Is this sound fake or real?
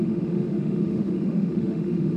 fake